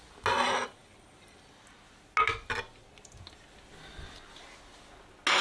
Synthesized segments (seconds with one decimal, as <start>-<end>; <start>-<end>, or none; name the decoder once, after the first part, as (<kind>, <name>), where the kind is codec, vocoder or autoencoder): none